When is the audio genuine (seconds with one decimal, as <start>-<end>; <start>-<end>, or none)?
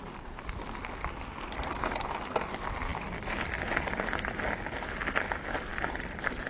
0.0-6.5